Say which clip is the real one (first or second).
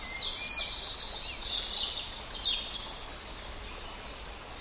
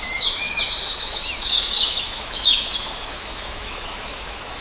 first